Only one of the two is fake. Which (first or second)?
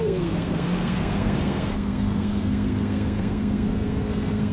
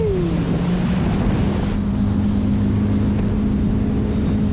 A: first